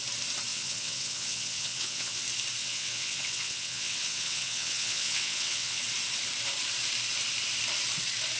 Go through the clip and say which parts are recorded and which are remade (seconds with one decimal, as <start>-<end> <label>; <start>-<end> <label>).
0.0-0.5 recorded; 0.5-2.2 remade; 2.2-2.6 recorded; 2.6-5.8 remade; 5.8-8.4 recorded